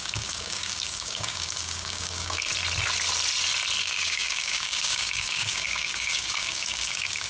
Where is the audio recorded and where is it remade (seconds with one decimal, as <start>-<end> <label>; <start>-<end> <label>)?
0.0-2.5 remade; 2.5-3.8 recorded; 3.8-7.3 remade